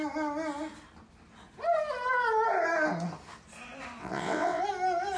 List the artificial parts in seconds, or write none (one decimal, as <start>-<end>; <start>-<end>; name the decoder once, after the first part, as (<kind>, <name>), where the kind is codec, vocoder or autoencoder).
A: 4.0-4.6 (vocoder, WaveNeXt)